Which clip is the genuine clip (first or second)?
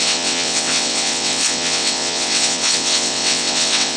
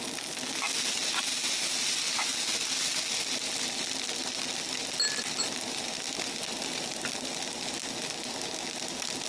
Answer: second